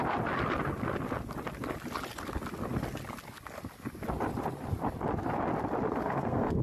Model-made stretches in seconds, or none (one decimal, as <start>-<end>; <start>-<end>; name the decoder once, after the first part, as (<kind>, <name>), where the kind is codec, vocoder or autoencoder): 5.9-6.6 (codec, SNAC)